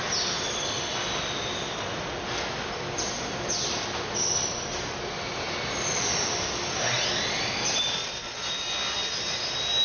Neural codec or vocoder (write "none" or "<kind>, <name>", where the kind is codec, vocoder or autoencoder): none